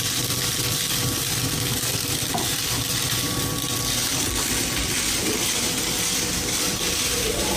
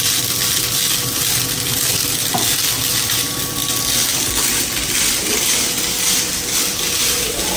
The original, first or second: second